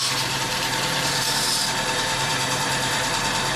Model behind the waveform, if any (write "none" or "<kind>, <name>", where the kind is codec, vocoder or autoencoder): vocoder, BigVGAN v2